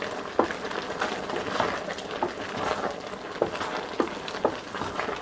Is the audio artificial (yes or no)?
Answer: no